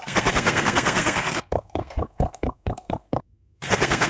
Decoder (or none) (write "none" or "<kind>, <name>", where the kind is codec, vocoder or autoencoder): codec, SNAC